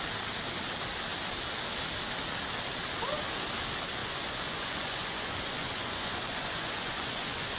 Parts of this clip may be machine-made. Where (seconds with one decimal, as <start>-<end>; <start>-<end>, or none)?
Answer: 4.0-7.6